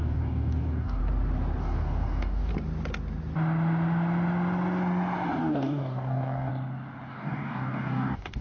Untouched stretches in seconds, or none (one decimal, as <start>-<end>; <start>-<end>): 1.0-1.6; 2.5-5.4; 6.5-7.1